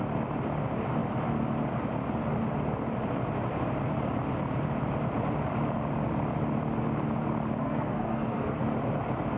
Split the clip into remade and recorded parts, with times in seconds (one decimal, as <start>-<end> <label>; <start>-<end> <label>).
0.0-7.6 recorded; 7.6-8.6 remade; 8.6-9.4 recorded